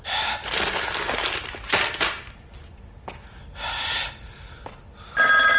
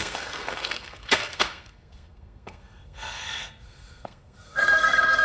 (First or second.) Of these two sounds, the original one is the first